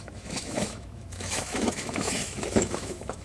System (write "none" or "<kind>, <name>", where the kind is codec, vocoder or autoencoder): autoencoder, DAC-VAE